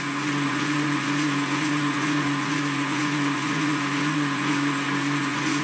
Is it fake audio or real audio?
fake